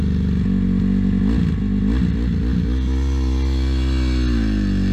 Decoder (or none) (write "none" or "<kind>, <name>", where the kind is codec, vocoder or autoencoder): none